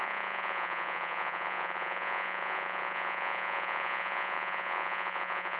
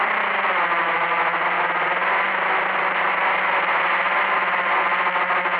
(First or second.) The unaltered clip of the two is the second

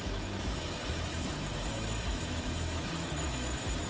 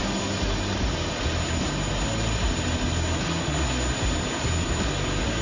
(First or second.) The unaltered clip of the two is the second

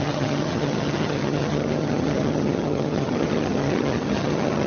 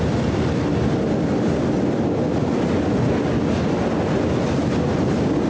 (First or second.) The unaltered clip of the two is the second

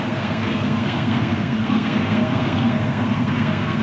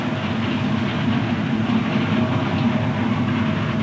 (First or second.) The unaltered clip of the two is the second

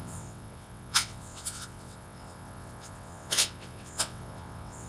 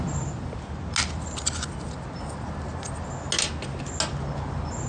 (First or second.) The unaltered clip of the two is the second